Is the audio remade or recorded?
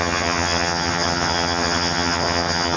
remade